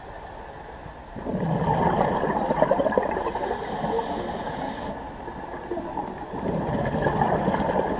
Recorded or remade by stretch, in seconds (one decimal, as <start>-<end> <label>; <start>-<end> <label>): 0.0-1.3 recorded; 1.3-3.4 remade; 3.4-8.0 recorded